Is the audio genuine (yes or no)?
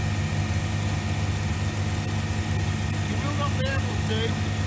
yes